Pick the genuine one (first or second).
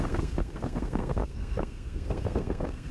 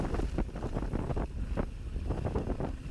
second